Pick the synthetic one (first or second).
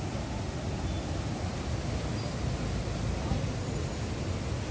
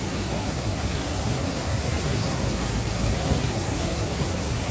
second